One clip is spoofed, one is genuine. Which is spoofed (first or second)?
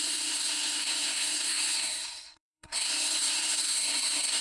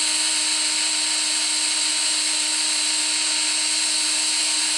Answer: first